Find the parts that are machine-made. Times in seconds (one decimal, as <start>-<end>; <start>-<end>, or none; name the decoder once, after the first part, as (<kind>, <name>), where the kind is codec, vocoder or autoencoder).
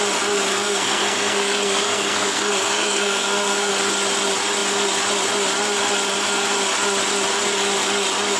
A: 0.5-3.7 (codec, SNAC)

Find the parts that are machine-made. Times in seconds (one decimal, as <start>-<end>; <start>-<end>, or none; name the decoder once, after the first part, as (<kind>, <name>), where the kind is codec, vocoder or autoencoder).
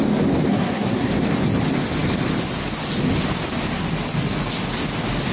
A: 0.5-1.1 (codec, SNAC)